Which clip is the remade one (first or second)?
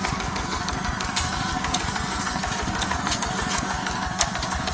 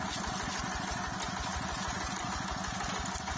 first